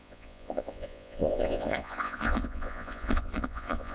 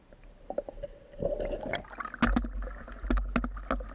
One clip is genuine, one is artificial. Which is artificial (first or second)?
first